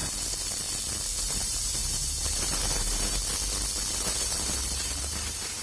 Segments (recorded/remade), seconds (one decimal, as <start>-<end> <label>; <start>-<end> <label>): 0.0-1.2 recorded; 1.2-3.2 remade; 3.2-3.9 recorded; 3.9-5.6 remade